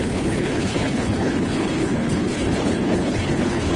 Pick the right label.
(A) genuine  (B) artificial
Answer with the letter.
B